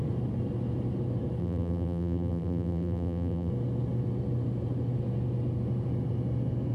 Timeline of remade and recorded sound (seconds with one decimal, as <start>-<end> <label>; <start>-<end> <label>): 0.0-1.4 recorded; 1.4-3.5 remade; 3.5-6.7 recorded